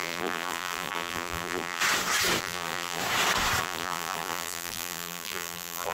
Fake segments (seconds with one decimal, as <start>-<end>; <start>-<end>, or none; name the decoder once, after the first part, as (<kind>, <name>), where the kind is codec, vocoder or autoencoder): 0.0-1.8 (vocoder, BigVGAN v2); 2.4-3.0; 3.6-5.9